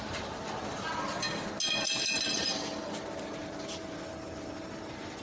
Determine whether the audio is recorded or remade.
recorded